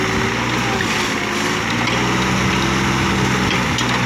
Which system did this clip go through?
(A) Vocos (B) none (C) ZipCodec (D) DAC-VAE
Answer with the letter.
B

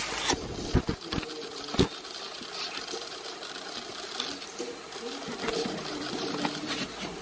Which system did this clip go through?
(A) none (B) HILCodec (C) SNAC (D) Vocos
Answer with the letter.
A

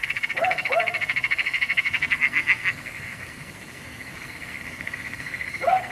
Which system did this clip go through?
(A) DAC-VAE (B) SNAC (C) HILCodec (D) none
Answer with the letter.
B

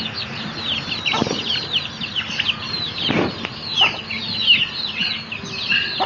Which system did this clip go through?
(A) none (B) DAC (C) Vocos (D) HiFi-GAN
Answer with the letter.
A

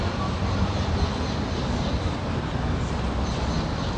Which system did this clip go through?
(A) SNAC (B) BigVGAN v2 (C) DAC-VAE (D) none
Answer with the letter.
D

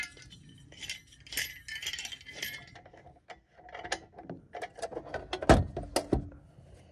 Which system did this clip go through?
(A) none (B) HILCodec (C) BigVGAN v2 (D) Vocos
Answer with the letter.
A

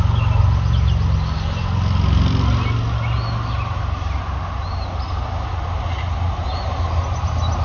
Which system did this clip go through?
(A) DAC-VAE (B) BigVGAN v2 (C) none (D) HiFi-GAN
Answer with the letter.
C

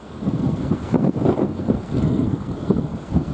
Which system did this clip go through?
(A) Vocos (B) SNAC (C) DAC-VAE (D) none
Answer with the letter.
B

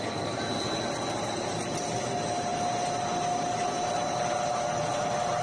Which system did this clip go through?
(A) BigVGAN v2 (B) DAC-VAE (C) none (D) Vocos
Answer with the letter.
C